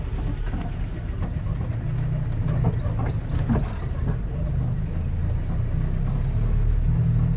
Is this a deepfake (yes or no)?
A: no